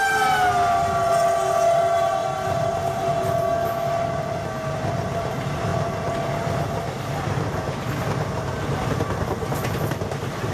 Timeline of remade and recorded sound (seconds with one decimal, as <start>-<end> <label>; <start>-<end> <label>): 0.0-10.5 recorded